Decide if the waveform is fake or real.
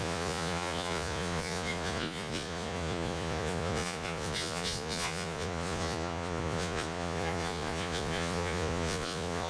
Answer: fake